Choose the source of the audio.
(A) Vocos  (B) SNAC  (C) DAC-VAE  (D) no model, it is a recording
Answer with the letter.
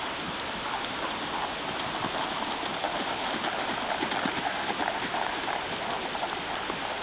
D